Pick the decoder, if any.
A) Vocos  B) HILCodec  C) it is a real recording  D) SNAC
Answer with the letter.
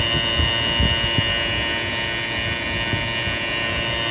C